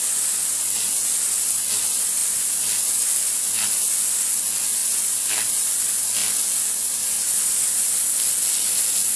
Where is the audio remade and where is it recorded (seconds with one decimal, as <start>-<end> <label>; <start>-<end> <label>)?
0.0-4.8 recorded; 4.8-5.7 remade; 5.7-9.2 recorded